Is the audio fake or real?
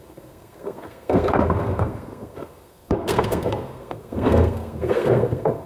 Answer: fake